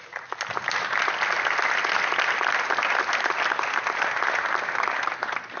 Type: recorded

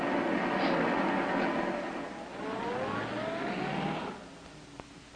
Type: recorded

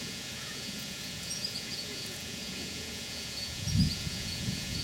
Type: remade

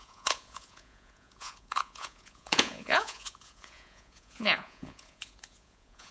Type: remade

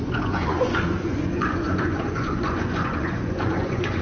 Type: remade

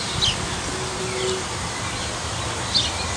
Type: recorded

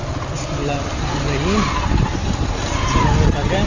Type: recorded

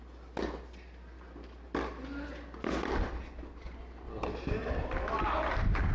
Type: recorded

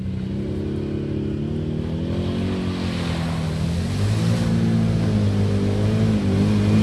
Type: recorded